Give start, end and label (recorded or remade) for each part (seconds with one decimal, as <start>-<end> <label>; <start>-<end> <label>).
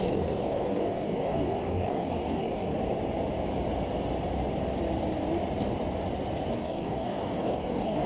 0.0-2.7 remade; 2.7-6.5 recorded; 6.5-8.1 remade